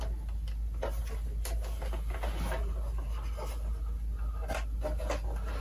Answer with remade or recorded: recorded